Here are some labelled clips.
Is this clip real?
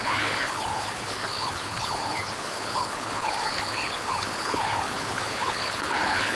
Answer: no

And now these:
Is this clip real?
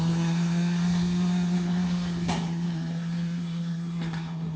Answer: no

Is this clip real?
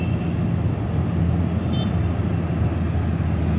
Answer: yes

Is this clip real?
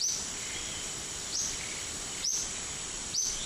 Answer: yes